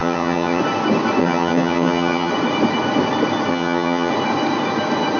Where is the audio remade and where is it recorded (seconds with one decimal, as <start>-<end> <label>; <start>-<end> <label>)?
0.0-0.6 remade; 0.6-1.2 recorded; 1.2-2.3 remade; 2.3-3.5 recorded; 3.5-4.1 remade; 4.1-5.2 recorded